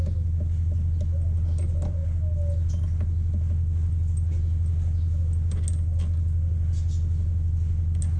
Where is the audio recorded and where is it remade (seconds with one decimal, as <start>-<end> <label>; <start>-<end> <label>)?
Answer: 0.0-8.2 recorded